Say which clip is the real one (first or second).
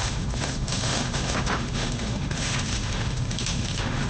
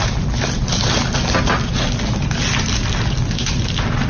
second